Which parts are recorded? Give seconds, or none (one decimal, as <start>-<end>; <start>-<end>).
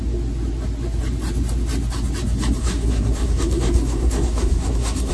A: 0.0-2.6